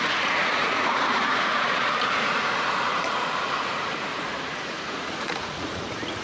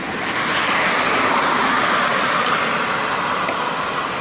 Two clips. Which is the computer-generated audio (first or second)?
first